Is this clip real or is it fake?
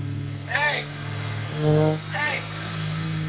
fake